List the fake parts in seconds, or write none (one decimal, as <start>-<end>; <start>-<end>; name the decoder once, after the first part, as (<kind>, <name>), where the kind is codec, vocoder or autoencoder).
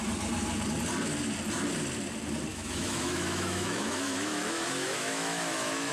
2.5-5.9 (autoencoder, DAC-VAE)